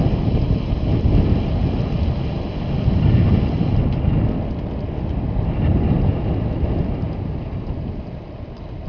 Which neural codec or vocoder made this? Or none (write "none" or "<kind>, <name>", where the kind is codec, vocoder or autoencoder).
none